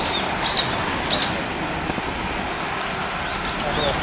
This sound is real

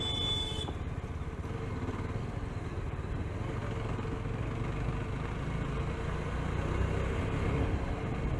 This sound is real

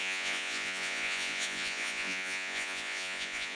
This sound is fake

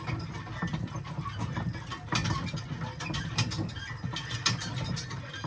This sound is real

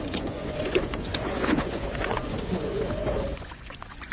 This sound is fake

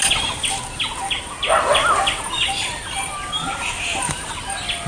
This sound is real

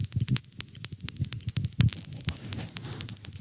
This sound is real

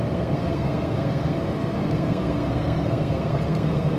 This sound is fake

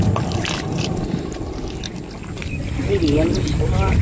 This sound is real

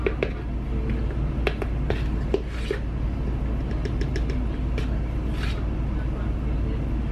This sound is real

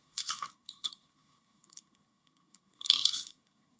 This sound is fake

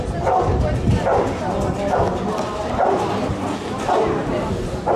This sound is real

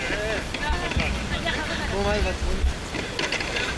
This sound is real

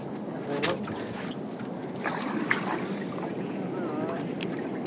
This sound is real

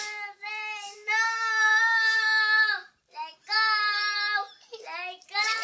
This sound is fake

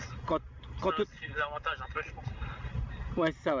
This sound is real